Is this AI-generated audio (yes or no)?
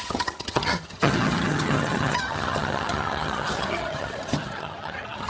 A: yes